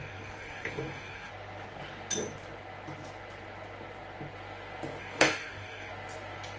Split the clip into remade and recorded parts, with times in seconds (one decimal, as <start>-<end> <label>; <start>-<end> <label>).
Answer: 0.0-1.3 remade; 1.3-5.0 recorded; 5.0-5.9 remade; 5.9-6.6 recorded